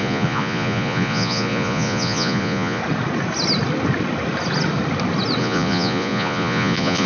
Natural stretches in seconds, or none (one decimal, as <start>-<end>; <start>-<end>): 2.8-5.4